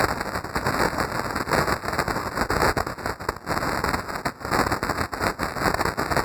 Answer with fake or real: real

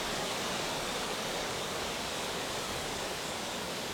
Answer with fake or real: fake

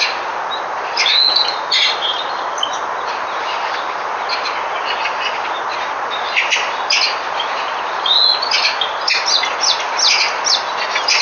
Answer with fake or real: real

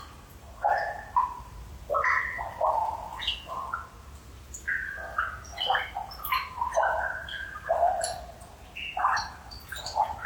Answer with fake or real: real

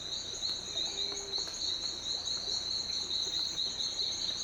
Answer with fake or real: real